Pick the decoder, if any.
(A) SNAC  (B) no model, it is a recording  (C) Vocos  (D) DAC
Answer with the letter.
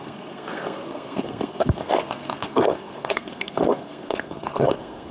A